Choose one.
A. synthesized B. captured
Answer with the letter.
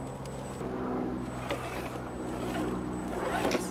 B